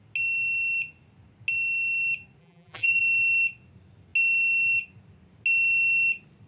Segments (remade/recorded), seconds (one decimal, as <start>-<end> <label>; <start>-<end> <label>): 0.0-2.4 recorded; 2.4-3.0 remade; 3.0-6.5 recorded